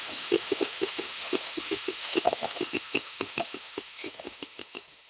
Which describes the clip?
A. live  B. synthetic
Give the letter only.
B